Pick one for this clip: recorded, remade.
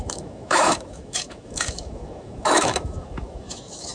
remade